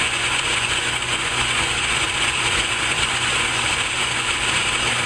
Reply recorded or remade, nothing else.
remade